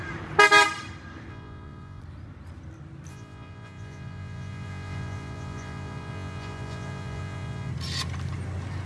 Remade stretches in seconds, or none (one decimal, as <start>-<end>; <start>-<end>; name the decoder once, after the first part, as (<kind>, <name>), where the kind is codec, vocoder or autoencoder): 1.3-2.0 (vocoder, Vocos); 3.1-7.7